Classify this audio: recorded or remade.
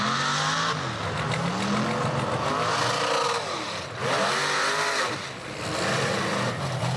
recorded